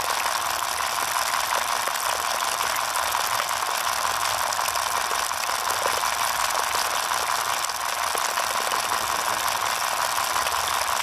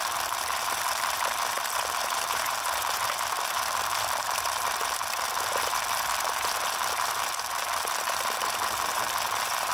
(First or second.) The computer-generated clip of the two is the second